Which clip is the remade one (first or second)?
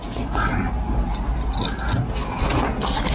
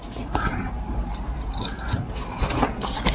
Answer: second